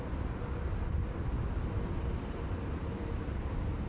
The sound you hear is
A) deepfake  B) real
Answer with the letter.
B